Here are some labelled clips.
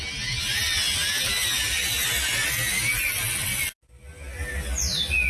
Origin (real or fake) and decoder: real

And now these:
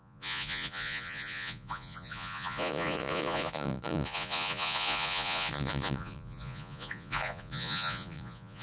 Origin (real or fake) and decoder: fake, vocoder, Vocos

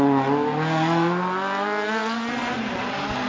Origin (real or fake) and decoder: real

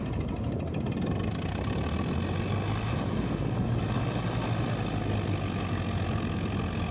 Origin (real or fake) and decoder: real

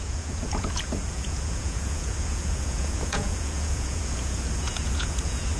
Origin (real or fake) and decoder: fake, vocoder, Vocos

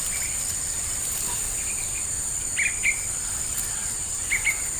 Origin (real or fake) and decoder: real